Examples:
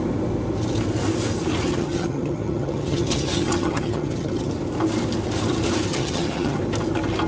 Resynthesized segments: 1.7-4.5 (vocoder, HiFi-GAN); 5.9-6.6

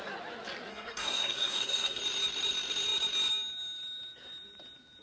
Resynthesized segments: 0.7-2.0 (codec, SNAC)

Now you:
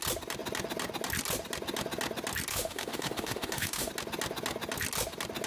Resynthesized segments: 2.5-3.9 (autoencoder, DAC-VAE)

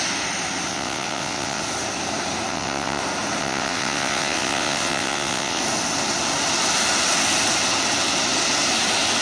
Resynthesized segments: 0.7-1.6 (vocoder, WaveNeXt); 2.5-3.0; 3.4-5.6

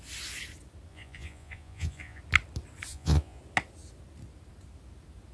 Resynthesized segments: 0.9-2.2 (vocoder, Vocos); 2.9-3.4